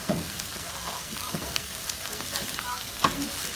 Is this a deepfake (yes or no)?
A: yes